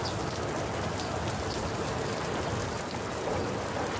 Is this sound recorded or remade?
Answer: recorded